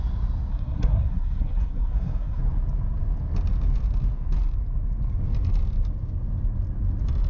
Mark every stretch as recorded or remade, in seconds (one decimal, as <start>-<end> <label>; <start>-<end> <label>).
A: 0.0-0.5 recorded; 0.5-2.4 remade; 2.4-7.3 recorded